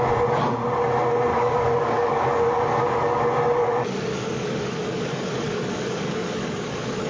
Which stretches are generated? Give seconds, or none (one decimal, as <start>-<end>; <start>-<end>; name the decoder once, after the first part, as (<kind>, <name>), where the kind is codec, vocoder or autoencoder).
1.3-3.2 (codec, DAC); 3.6-7.1